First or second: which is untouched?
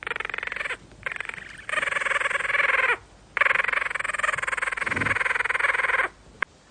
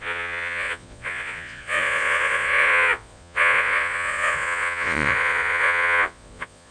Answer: first